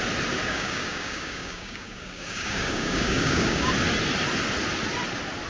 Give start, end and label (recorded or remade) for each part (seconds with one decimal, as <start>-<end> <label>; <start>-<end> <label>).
0.0-0.4 recorded; 0.4-3.7 remade; 3.7-5.5 recorded